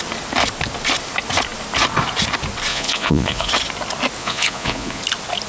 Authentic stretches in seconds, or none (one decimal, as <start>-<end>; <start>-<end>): 0.0-2.7; 3.5-4.2; 5.0-5.5